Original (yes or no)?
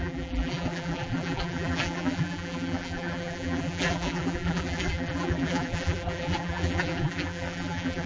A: no